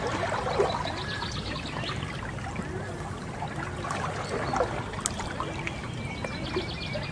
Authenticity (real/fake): real